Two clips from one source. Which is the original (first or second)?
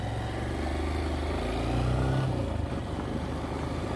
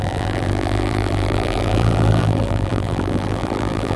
first